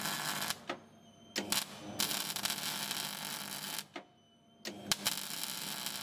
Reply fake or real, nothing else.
real